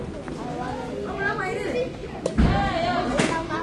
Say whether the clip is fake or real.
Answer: real